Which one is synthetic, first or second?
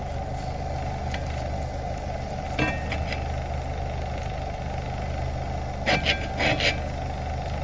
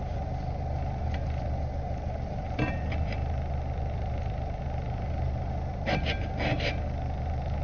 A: second